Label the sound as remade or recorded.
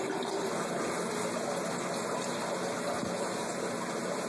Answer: recorded